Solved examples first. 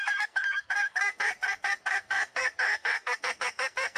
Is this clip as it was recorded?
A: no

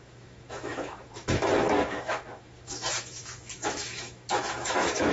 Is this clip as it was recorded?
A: no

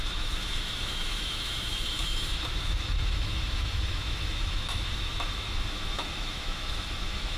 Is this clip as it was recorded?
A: no